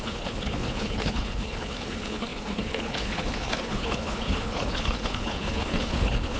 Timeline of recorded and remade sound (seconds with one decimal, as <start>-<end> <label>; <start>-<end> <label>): 0.0-6.4 remade